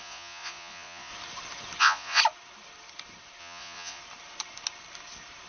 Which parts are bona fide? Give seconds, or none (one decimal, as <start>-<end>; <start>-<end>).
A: 1.1-1.8; 2.2-3.4; 4.0-5.5